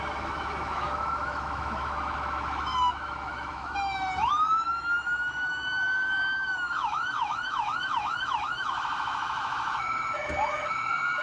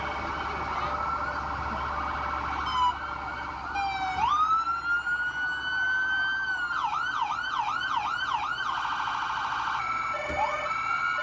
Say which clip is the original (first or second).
second